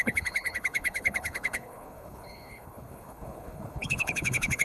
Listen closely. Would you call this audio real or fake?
fake